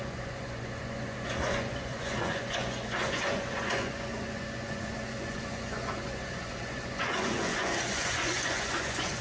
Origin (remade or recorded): remade